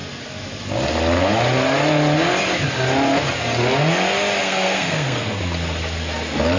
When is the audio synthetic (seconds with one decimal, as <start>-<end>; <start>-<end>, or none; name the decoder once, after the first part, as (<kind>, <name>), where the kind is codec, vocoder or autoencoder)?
4.4-5.4 (codec, SNAC)